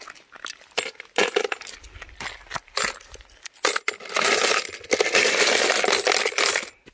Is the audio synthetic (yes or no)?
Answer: no